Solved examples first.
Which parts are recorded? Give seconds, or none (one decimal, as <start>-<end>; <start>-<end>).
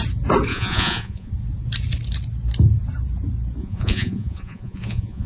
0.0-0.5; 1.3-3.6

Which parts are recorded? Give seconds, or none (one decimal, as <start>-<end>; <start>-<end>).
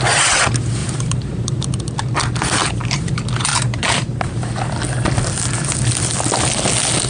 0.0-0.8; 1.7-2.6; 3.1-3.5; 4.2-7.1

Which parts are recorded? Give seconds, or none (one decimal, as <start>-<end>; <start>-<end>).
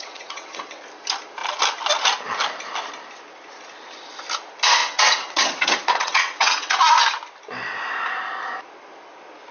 0.8-4.8; 6.8-9.5